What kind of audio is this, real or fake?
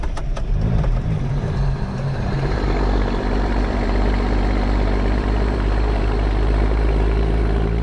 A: fake